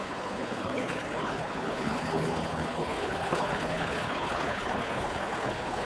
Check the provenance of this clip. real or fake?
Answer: fake